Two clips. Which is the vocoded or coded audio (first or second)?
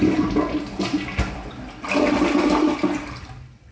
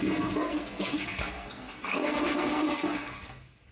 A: second